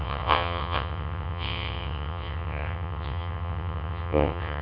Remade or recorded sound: remade